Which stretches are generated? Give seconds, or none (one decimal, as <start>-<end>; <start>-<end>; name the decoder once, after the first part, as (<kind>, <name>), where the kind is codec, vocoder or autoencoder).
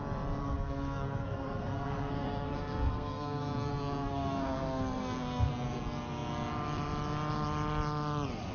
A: 0.4-5.5 (codec, SNAC)